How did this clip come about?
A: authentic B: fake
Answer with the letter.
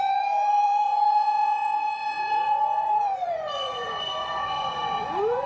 B